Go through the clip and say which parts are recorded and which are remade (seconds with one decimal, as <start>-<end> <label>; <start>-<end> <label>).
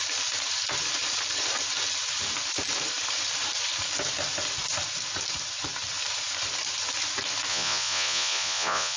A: 0.0-7.5 recorded; 7.5-9.0 remade